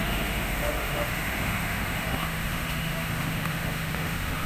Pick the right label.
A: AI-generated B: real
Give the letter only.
A